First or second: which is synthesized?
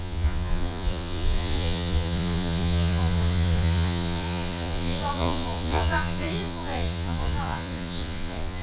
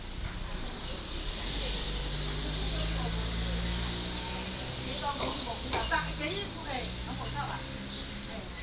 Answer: first